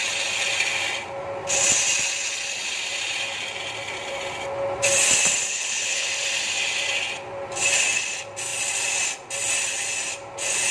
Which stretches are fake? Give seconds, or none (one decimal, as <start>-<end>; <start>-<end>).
5.5-6.1